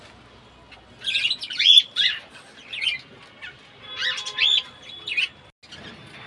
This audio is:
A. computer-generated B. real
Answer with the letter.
B